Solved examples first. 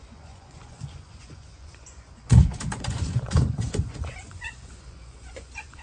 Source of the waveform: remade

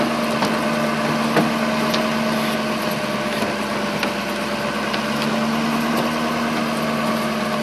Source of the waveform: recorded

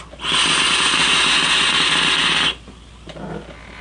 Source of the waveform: recorded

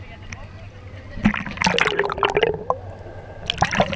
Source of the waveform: recorded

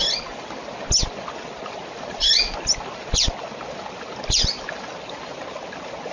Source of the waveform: recorded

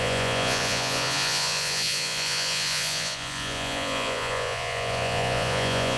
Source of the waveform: remade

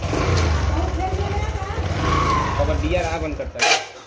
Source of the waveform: recorded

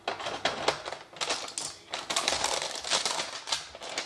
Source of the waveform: recorded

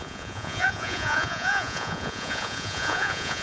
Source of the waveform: remade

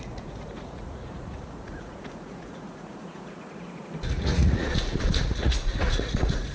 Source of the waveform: remade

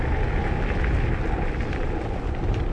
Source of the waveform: recorded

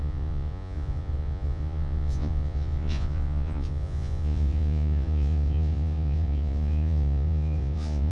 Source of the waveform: remade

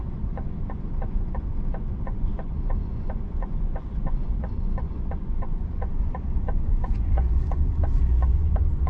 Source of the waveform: remade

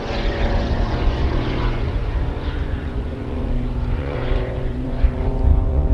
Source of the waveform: remade